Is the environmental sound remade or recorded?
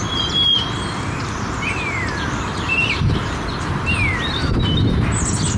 remade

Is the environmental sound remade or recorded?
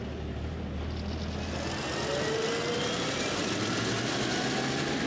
recorded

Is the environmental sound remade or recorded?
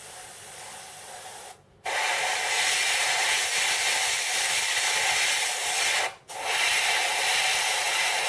recorded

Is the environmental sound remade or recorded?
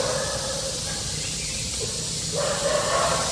recorded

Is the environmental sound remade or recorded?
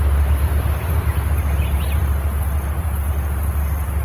recorded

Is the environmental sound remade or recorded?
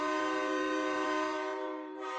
remade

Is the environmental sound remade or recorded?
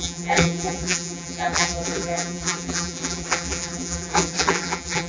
remade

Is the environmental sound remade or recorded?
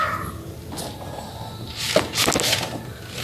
recorded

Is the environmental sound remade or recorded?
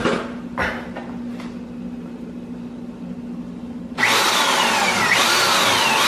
recorded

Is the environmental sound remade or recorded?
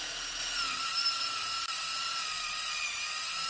recorded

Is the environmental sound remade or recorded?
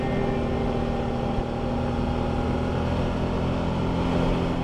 recorded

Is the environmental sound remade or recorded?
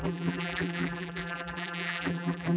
remade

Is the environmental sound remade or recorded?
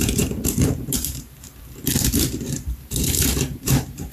remade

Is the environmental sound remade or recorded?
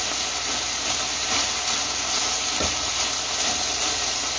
recorded